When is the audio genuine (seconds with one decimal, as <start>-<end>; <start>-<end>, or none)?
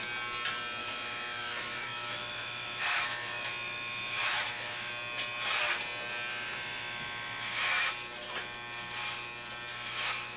0.0-0.8; 4.9-6.3; 7.9-9.7